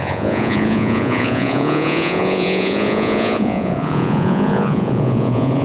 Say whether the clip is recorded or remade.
remade